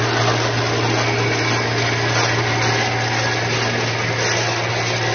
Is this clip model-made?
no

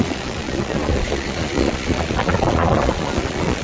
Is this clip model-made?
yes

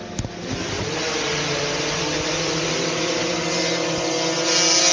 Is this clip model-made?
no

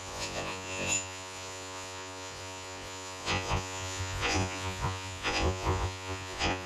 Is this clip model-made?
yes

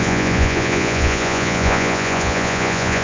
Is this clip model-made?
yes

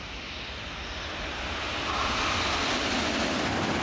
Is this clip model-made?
no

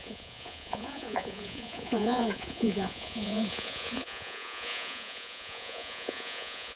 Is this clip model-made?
yes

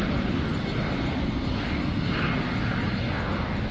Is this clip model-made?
no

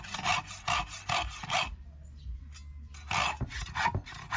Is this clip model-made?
no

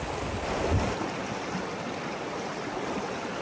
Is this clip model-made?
no